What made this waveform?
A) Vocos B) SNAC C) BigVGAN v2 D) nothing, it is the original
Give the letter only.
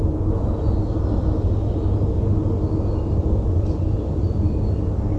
D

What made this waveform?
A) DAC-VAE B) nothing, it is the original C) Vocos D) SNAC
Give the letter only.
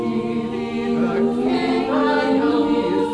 B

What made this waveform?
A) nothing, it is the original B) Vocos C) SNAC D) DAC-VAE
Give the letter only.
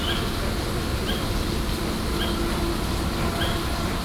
A